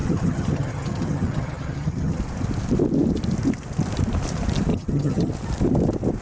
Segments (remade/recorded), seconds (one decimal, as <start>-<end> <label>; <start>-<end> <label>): 0.0-2.2 remade; 2.2-4.7 recorded; 4.7-5.3 remade; 5.3-6.2 recorded